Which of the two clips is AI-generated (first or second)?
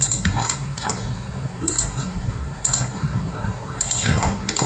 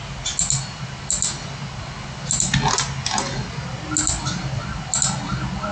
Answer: first